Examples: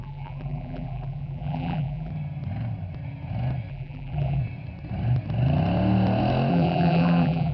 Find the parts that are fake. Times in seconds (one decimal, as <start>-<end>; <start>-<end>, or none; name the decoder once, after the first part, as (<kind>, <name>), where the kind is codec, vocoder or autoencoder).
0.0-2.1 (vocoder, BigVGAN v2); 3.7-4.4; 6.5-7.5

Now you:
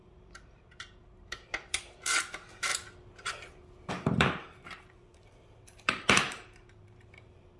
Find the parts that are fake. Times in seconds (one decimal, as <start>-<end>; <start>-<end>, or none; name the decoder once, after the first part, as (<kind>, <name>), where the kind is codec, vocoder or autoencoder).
0.0-2.7 (vocoder, BigVGAN v2); 3.9-7.6

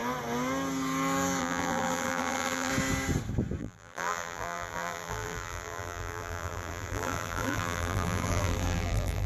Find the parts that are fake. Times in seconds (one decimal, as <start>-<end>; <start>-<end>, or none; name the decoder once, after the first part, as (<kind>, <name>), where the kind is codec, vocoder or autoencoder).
1.4-2.7 (vocoder, BigVGAN v2); 3.6-9.3

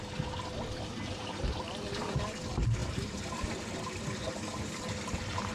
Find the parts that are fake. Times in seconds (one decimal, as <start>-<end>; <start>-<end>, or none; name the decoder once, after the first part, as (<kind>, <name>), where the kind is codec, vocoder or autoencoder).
2.8-3.4 (vocoder, BigVGAN v2); 4.2-4.8

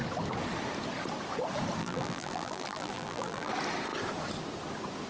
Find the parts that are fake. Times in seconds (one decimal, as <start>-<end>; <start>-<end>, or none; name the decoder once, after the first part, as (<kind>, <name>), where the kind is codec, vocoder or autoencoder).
1.8-3.5 (vocoder, BigVGAN v2)